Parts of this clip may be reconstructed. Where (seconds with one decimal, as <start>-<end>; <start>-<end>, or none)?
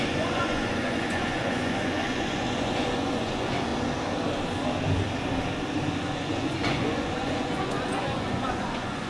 0.0-3.7; 6.0-9.1